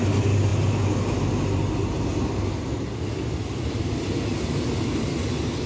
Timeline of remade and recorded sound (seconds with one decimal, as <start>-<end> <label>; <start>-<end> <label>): 0.0-0.5 remade; 0.5-3.0 recorded; 3.0-5.7 remade